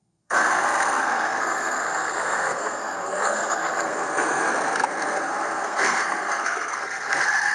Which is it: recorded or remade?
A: remade